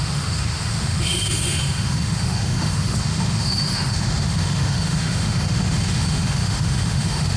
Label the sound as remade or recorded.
remade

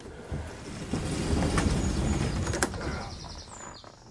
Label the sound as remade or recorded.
recorded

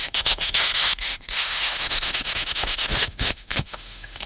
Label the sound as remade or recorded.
remade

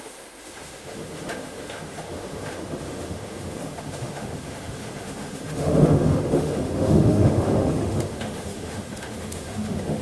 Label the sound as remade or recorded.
remade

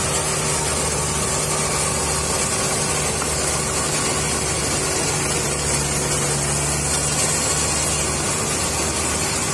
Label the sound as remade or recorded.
recorded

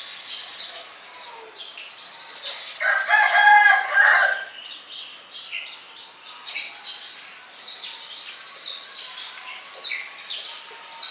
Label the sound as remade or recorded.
recorded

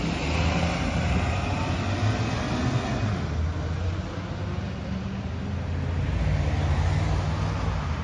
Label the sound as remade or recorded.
recorded